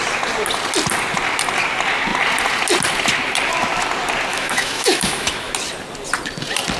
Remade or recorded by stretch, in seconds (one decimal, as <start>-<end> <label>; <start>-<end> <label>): 0.0-4.3 recorded; 4.3-5.5 remade; 5.5-6.8 recorded